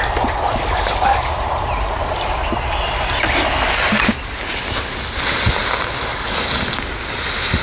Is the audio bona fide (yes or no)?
yes